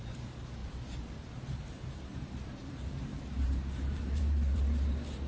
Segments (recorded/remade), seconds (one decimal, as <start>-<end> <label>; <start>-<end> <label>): 0.0-5.3 remade